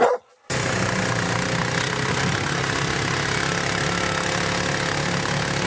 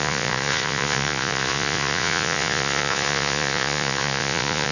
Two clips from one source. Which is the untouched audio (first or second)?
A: first